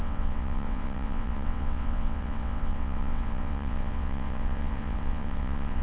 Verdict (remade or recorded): remade